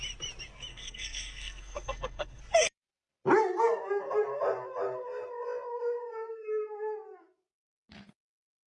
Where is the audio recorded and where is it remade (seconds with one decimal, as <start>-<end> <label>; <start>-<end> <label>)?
0.0-0.7 recorded; 0.7-2.4 remade; 2.4-8.7 recorded